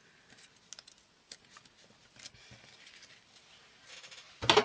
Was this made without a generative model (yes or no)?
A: yes